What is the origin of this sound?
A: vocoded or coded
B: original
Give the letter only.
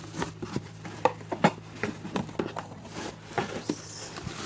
B